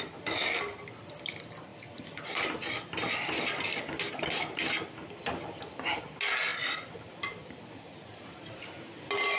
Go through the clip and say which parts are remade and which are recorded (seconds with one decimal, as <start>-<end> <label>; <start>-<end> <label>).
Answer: 0.0-1.7 recorded; 1.7-4.4 remade; 4.4-6.5 recorded; 6.5-8.8 remade; 8.8-9.4 recorded